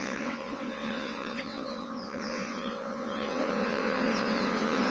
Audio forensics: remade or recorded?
remade